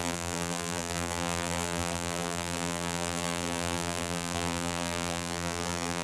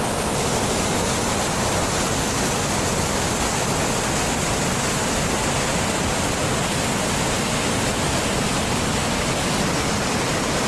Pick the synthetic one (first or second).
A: first